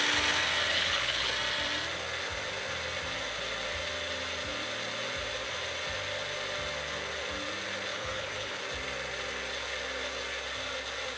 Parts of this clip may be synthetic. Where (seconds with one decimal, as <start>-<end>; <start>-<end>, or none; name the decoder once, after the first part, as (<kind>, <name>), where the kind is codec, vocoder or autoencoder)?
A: 0.7-1.3 (codec, HILCodec); 7.9-8.6